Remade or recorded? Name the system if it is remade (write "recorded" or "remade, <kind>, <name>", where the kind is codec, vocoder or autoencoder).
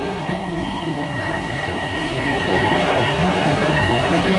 remade, codec, SNAC